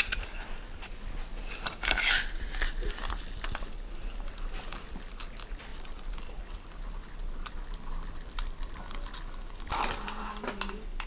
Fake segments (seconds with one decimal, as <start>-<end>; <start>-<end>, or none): 5.7-6.4